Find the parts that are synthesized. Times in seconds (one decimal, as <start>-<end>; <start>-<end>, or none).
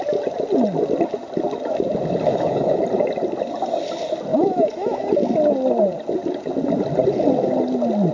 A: 2.3-2.8; 4.3-5.1